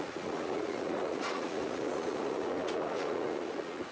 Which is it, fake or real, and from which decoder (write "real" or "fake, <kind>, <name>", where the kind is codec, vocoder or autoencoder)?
fake, vocoder, Vocos